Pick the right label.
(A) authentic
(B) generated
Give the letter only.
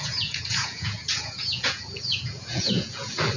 B